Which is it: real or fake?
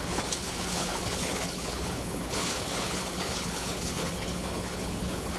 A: fake